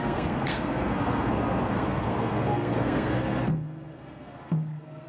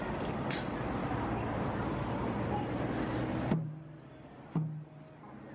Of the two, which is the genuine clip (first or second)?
second